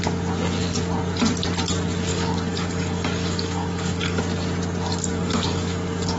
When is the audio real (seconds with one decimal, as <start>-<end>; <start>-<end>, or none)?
0.0-2.1; 4.2-5.1